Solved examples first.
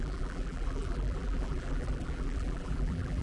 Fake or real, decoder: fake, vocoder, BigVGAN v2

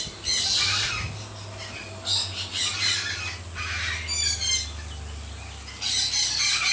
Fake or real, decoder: real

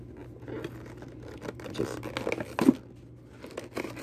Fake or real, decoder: real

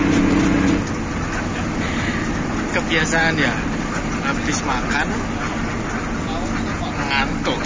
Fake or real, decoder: real